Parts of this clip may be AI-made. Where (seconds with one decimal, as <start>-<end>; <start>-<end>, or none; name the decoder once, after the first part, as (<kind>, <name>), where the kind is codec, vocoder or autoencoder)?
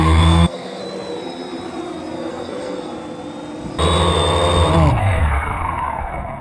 0.0-0.8 (codec, SNAC); 2.3-2.9; 4.9-6.4